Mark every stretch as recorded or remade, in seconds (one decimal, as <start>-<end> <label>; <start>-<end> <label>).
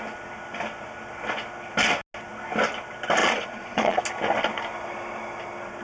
0.0-3.2 recorded; 3.2-4.0 remade; 4.0-5.8 recorded